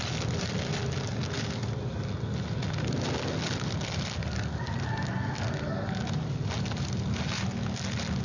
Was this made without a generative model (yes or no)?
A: yes